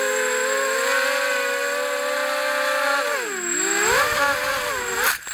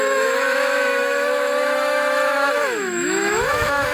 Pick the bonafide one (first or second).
first